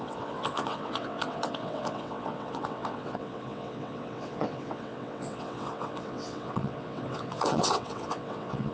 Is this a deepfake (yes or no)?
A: yes